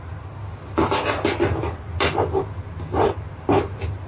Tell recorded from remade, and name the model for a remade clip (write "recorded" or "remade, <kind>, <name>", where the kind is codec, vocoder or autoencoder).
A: recorded